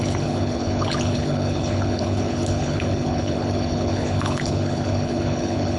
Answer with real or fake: fake